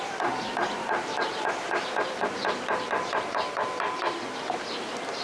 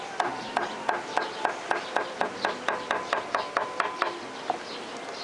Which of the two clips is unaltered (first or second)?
second